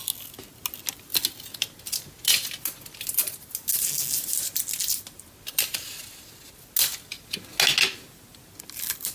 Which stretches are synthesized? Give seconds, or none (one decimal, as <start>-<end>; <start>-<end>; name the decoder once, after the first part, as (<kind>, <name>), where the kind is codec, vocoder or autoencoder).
none